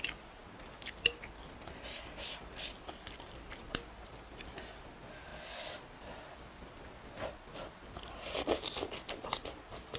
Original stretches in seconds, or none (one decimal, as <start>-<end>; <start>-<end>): 0.0-10.0